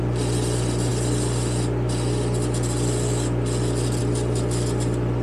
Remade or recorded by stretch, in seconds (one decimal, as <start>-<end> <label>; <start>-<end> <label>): 0.0-5.2 recorded